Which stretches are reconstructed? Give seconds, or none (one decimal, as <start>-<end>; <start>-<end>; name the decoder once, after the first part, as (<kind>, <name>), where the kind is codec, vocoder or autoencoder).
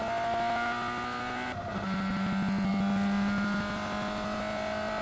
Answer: none